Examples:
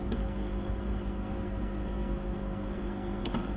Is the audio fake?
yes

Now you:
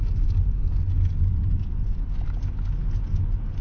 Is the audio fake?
no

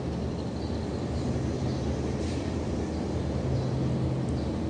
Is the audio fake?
no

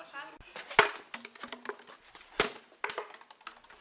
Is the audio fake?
no